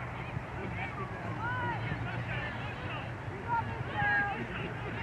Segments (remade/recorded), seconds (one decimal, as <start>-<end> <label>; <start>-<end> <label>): 0.0-0.6 recorded; 0.6-3.6 remade; 3.6-5.0 recorded